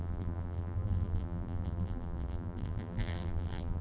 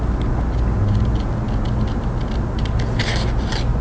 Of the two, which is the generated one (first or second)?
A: first